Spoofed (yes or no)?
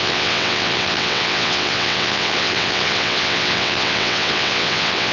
yes